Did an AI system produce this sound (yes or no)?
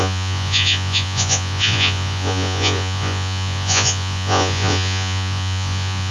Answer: yes